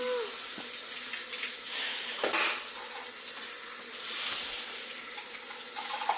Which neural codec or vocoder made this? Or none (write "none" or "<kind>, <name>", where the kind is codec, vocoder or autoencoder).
none